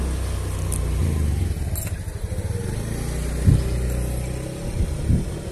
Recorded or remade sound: recorded